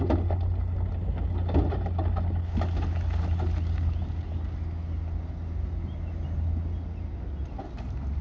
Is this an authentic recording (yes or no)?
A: yes